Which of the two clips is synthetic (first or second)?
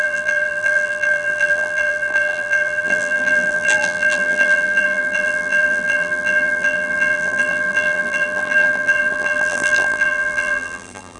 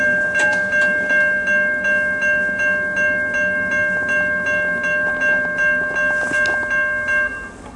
first